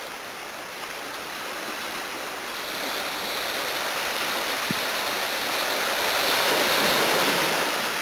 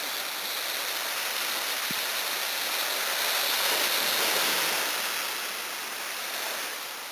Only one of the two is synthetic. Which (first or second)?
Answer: first